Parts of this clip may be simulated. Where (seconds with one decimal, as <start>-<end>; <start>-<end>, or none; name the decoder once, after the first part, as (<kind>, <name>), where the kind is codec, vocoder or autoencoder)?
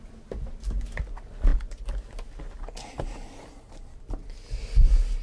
none